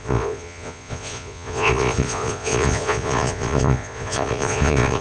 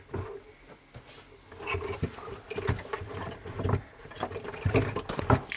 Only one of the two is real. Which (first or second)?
second